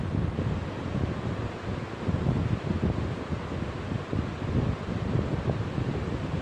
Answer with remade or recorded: recorded